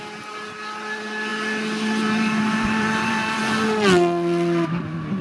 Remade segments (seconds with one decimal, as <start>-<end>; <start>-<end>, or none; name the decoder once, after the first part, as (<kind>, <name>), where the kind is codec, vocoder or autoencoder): 1.3-3.4 (vocoder, BigVGAN v2)